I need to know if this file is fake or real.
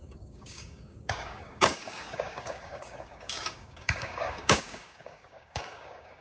fake